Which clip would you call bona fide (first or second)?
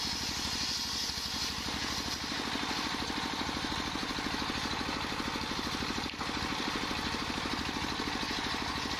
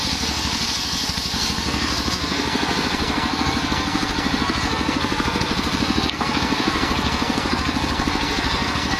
first